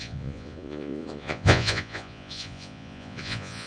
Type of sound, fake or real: fake